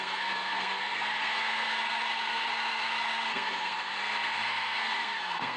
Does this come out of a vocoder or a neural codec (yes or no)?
yes